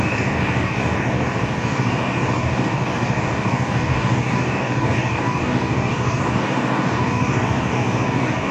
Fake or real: fake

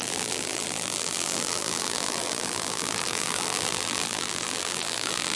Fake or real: fake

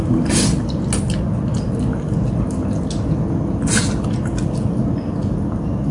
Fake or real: real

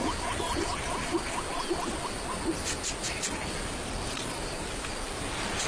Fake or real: real